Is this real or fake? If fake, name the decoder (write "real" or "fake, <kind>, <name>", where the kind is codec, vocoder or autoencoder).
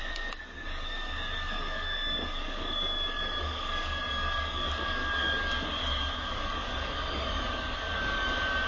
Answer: fake, codec, DAC